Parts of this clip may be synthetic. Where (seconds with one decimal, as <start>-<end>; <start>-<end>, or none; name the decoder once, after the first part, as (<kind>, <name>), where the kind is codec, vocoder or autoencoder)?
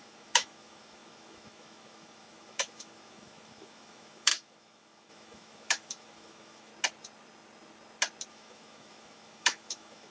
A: 0.0-6.7 (autoencoder, DAC-VAE); 8.3-10.1